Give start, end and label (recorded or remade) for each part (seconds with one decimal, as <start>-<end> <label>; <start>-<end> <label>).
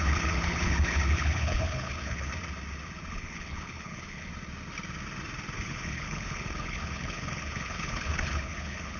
0.0-2.3 remade; 2.3-3.1 recorded; 3.1-4.3 remade; 4.3-5.6 recorded; 5.6-9.0 remade